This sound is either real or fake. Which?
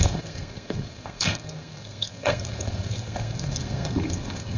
fake